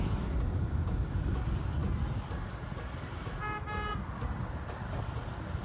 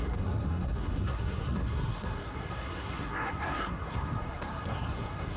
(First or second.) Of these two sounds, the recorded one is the first